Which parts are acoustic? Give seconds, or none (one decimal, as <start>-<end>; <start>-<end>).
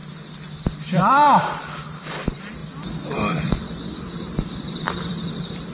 0.0-0.6